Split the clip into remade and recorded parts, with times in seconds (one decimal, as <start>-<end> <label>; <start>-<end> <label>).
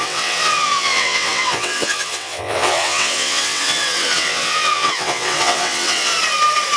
0.0-6.1 remade; 6.1-6.8 recorded